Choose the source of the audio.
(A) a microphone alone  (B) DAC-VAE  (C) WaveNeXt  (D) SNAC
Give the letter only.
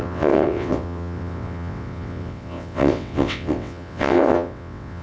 C